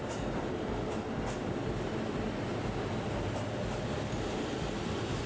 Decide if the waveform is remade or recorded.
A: recorded